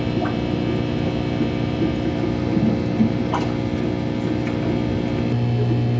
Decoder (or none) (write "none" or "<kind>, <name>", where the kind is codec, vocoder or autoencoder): none